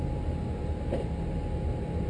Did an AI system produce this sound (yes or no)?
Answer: no